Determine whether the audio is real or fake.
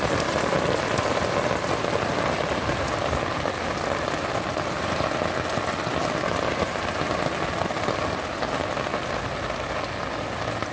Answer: real